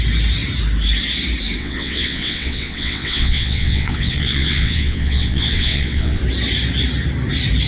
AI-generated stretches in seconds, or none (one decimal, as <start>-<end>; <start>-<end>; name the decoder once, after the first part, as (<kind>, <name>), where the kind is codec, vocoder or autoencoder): 1.6-6.2 (vocoder, WaveNeXt)